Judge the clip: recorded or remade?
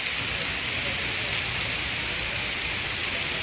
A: recorded